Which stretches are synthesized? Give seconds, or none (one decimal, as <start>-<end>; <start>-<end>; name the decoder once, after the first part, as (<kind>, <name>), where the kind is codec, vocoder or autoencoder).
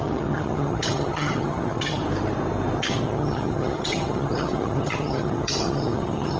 0.0-2.0 (vocoder, HiFi-GAN); 2.8-6.4